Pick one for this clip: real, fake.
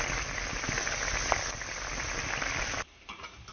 real